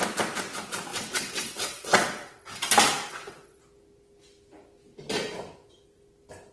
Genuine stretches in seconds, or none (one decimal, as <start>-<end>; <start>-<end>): 0.0-0.9; 2.7-3.1; 3.6-6.5